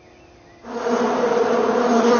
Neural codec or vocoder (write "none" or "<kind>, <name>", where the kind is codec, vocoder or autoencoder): none